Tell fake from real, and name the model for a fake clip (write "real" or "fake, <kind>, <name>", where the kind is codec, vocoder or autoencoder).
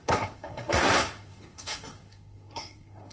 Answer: fake, codec, SNAC